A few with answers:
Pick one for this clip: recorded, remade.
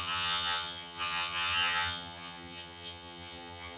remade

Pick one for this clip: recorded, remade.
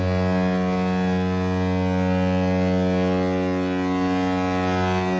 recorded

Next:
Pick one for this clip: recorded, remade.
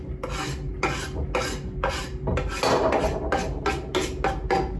recorded